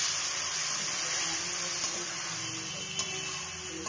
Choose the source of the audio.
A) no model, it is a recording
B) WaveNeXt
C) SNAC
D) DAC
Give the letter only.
A